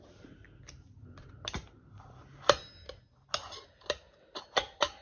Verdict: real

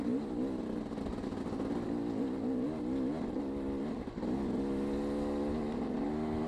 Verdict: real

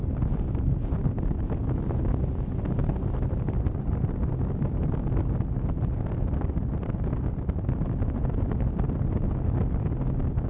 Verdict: real